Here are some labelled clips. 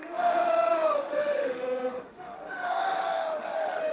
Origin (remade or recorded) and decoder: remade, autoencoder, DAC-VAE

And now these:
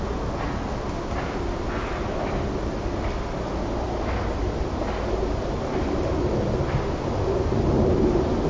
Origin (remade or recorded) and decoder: recorded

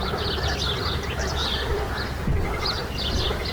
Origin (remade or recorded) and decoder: recorded